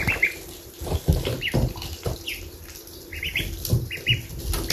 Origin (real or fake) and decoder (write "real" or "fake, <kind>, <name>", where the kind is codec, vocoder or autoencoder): real